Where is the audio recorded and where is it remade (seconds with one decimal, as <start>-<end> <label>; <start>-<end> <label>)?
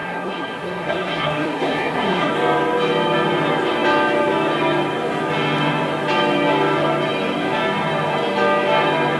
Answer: 0.0-2.3 remade; 2.3-9.2 recorded